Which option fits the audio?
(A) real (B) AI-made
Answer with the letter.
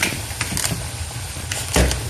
B